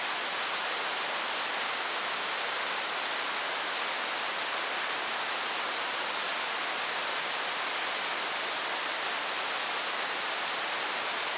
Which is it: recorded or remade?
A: recorded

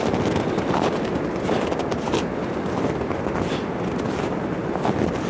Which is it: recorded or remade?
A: recorded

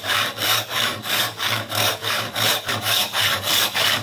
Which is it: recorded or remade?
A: remade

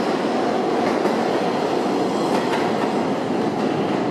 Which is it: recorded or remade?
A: recorded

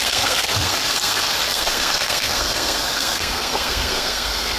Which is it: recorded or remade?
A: remade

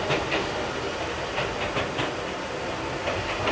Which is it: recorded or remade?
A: recorded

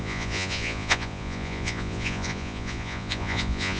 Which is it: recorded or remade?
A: remade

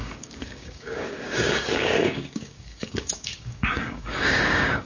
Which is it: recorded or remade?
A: remade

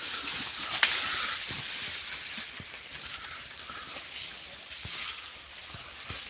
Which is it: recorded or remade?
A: recorded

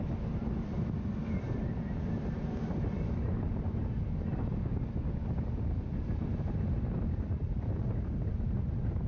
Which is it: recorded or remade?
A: recorded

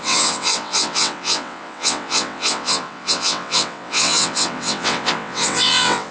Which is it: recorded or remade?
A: remade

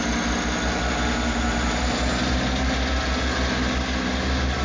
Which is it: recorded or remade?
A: recorded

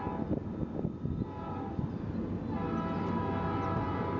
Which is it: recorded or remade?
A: recorded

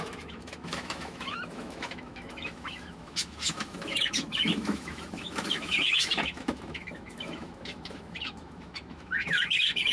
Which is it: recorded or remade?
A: remade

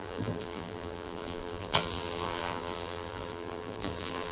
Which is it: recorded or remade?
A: remade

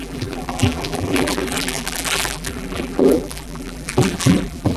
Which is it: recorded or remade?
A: remade